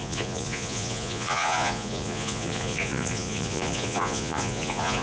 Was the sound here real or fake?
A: fake